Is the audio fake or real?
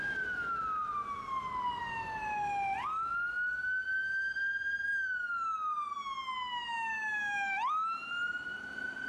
real